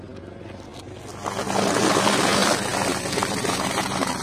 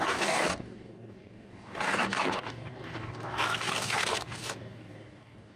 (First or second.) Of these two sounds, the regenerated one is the second